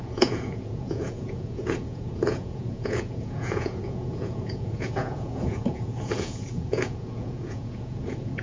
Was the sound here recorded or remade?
remade